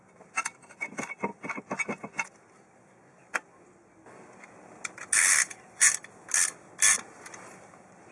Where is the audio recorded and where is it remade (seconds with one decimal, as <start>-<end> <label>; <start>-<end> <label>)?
0.0-8.1 recorded